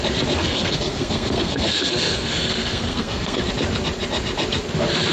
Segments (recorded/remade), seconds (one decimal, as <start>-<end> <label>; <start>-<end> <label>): 0.0-0.4 recorded; 0.4-3.5 remade; 3.5-5.1 recorded